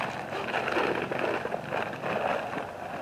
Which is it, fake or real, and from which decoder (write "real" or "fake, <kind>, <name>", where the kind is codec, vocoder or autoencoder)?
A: real